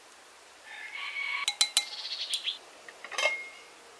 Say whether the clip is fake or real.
real